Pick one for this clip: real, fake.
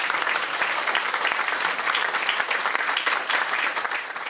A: fake